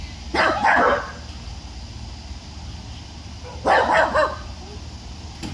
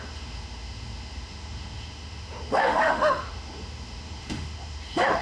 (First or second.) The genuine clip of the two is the first